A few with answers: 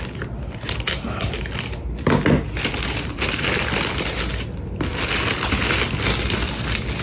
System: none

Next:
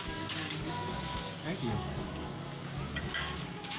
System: codec, DAC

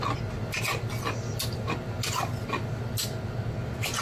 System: none